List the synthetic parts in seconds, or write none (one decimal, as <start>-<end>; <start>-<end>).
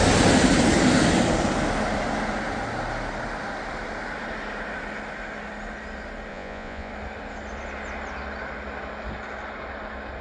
6.3-6.9